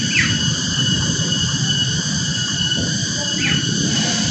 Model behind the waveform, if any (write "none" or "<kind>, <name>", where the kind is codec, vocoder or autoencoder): vocoder, BigVGAN v2